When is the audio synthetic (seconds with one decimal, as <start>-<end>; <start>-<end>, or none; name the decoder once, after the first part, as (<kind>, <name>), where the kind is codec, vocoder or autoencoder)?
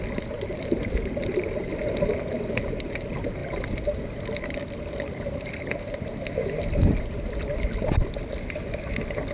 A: none